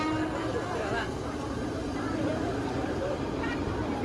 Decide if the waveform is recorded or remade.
remade